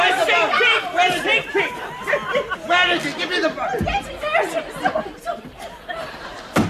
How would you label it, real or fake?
real